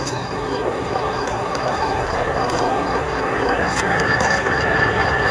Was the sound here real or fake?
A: fake